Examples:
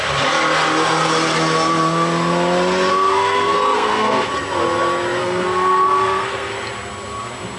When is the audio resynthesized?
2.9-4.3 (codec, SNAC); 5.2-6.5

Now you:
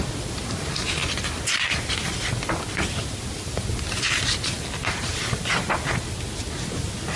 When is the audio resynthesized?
none

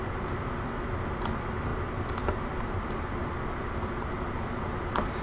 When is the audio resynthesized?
none

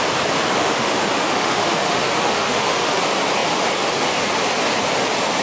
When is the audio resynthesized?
0.6-3.0 (autoencoder, DAC-VAE)

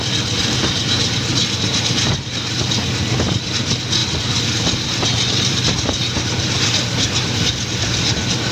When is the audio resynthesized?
0.4-2.9 (vocoder, BigVGAN v2); 4.0-7.5

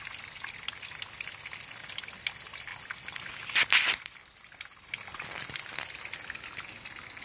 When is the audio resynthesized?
none

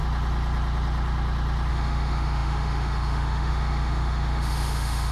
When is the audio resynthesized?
1.7-5.1 (autoencoder, DAC-VAE)